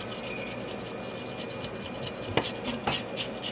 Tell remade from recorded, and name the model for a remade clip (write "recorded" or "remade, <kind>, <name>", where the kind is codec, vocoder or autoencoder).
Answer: recorded